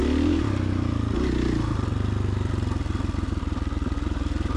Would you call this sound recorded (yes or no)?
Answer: yes